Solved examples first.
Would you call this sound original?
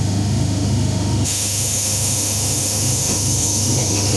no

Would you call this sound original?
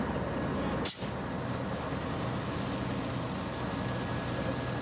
yes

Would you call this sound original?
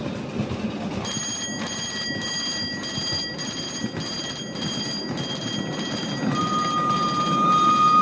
yes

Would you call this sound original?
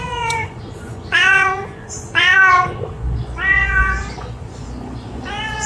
no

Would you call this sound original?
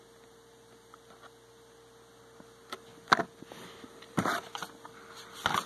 yes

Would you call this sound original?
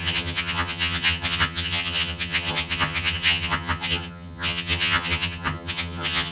no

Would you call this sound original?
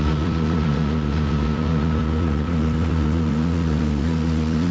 no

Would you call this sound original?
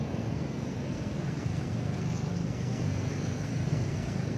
no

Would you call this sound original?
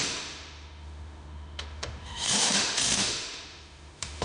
no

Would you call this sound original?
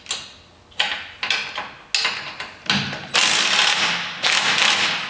yes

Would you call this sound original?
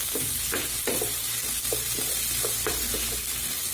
no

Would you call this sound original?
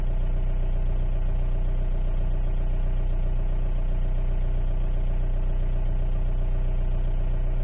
yes